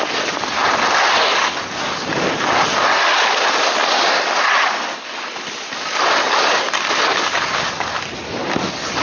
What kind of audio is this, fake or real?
real